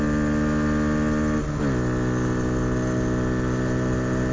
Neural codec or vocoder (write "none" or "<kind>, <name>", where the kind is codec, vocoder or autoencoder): none